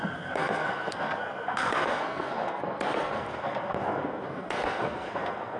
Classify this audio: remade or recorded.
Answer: remade